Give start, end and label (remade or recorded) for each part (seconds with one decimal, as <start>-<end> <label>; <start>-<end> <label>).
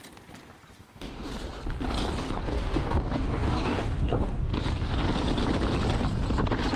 0.0-0.8 recorded; 0.8-1.3 remade; 1.3-2.4 recorded; 2.4-4.5 remade; 4.5-6.8 recorded